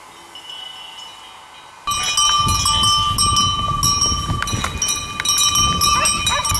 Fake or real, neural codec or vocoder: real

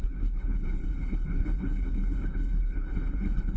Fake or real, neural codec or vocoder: fake, codec, HILCodec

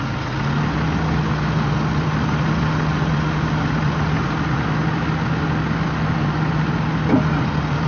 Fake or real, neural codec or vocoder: real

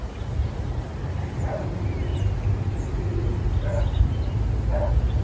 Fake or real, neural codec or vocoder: real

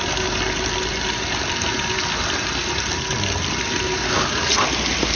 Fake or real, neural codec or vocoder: real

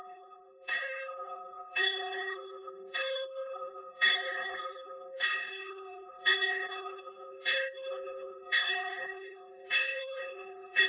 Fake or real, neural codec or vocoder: fake, codec, HILCodec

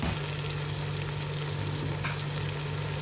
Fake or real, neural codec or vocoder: real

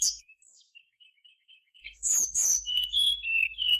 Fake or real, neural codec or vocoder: fake, codec, SNAC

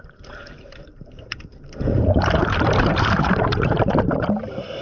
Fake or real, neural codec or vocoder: fake, vocoder, BigVGAN v2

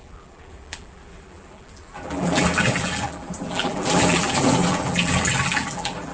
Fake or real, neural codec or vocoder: fake, vocoder, BigVGAN v2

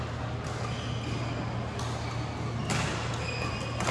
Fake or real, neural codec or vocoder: real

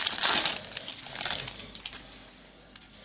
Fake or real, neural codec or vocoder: real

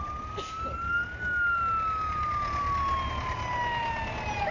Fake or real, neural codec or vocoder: real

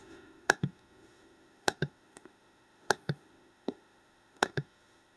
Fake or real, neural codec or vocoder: fake, autoencoder, DAC-VAE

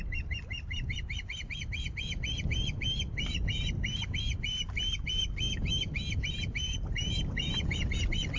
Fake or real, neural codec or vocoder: real